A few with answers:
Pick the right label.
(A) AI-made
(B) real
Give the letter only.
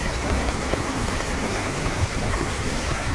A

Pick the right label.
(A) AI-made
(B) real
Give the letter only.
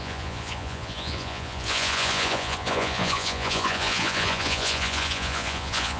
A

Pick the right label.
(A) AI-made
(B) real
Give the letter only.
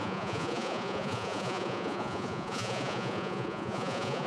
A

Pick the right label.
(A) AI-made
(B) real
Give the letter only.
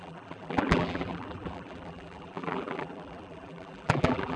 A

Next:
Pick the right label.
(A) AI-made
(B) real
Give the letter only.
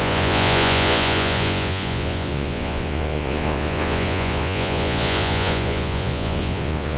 A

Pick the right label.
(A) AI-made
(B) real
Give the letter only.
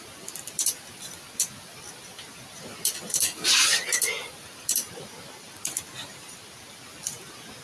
A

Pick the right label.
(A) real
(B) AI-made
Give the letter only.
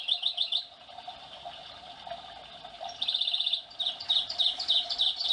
A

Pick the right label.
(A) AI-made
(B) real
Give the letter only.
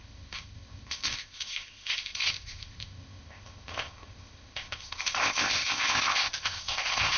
A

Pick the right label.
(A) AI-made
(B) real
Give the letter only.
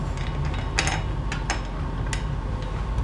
B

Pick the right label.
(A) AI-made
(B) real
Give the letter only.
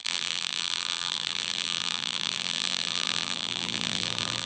A